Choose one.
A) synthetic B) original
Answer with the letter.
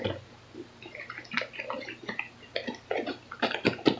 B